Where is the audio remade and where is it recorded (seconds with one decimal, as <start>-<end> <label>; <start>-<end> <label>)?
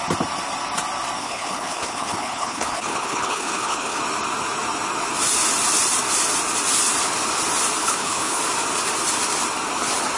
0.0-1.2 recorded; 1.2-4.0 remade; 4.0-7.8 recorded; 7.8-8.4 remade; 8.4-10.2 recorded